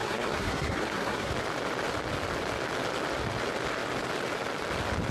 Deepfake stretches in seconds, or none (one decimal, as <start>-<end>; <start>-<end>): 0.0-1.3